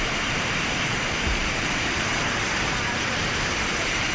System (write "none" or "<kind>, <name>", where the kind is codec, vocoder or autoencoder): vocoder, BigVGAN v2